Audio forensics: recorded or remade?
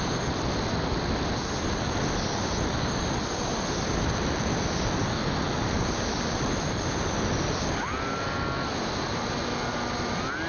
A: recorded